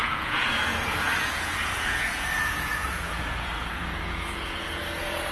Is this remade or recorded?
remade